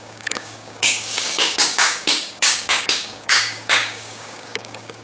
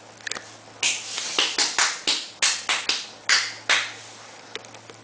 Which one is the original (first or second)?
second